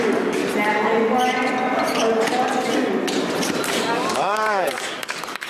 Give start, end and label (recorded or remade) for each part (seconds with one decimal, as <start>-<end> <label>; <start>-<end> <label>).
0.0-0.4 remade; 0.4-3.7 recorded; 3.7-5.5 remade